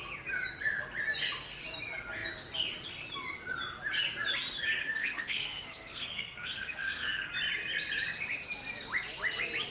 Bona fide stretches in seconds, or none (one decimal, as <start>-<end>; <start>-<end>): 0.0-4.8; 7.3-9.7